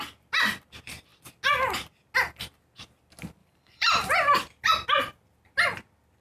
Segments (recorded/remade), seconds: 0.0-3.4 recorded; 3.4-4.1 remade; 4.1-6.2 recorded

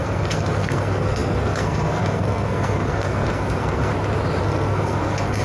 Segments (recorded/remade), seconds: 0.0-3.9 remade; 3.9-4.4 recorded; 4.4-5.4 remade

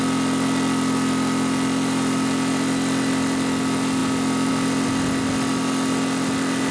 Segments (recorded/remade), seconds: 0.0-6.7 recorded